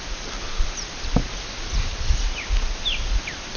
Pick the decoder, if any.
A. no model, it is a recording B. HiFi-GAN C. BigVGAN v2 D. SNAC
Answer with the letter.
A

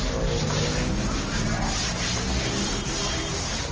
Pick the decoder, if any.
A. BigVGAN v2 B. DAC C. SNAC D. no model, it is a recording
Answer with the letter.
D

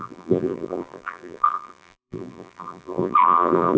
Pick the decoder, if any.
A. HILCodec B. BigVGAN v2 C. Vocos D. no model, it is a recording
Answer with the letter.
B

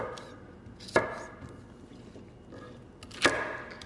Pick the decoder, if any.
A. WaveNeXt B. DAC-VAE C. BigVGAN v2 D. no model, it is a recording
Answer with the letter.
D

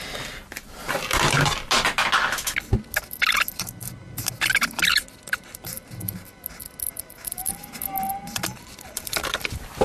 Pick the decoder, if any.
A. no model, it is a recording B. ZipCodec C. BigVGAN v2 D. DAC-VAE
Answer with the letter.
A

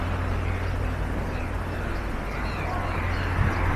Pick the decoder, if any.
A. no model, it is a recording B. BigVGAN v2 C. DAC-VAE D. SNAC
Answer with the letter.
A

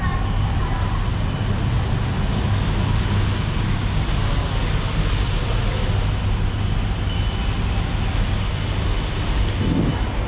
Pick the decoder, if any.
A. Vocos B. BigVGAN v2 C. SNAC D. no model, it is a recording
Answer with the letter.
D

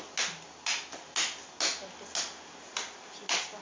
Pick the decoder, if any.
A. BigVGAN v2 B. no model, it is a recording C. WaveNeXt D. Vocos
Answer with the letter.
B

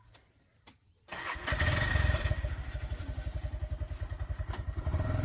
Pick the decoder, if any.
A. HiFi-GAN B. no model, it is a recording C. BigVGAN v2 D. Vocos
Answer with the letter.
C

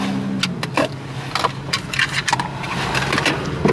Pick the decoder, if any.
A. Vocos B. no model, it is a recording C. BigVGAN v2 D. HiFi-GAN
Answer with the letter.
B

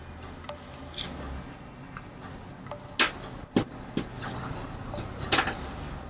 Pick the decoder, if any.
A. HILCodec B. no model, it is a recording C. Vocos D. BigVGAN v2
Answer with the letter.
B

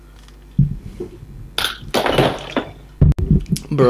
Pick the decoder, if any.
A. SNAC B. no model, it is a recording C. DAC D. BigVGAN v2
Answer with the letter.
B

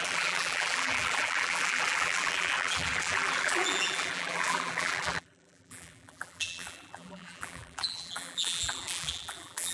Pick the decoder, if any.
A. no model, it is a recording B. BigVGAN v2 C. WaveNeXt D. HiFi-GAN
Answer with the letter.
B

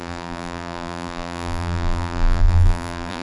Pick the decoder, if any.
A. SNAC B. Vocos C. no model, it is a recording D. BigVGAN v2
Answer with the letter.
D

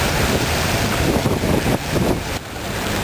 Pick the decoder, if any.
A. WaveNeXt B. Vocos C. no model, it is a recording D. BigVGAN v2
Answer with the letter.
D